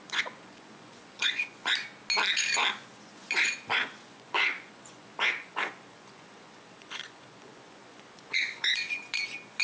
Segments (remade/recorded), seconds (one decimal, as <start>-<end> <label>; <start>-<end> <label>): 0.0-1.9 remade; 1.9-2.7 recorded; 2.7-9.6 remade